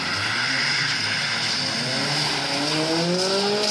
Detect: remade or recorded recorded